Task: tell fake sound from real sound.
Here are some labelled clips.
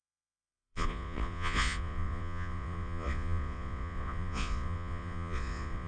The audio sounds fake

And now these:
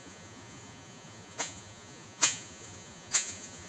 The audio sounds fake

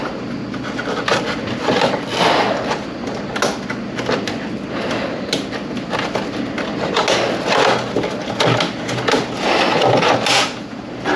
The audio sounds real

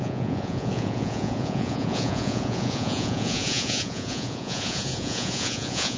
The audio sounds fake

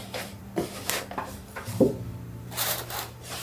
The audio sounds fake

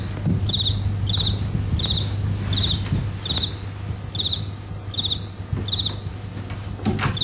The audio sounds real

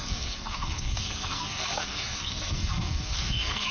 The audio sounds fake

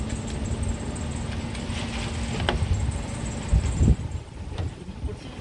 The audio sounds real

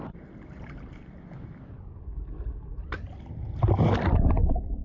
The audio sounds real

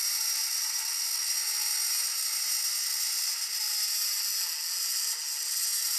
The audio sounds real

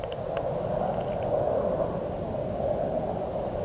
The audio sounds real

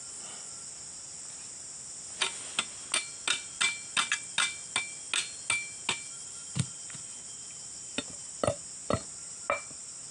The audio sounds real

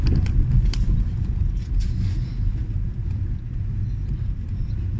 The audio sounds real